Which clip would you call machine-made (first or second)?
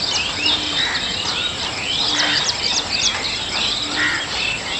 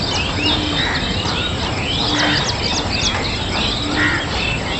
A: first